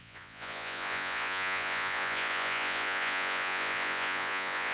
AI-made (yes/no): yes